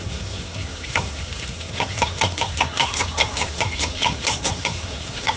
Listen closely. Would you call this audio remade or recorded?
remade